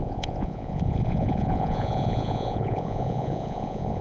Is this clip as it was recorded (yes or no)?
no